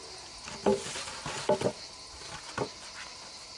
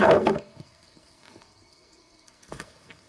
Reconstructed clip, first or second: second